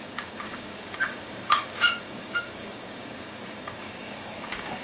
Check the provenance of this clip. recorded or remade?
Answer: remade